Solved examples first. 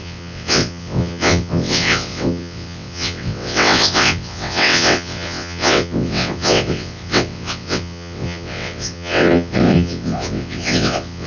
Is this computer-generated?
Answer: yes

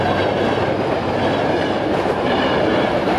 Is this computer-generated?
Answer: yes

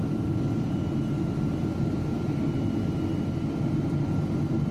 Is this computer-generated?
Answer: no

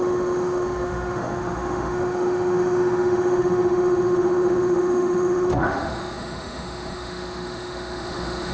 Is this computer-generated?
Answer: yes